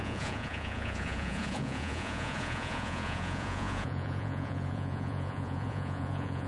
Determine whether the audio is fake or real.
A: fake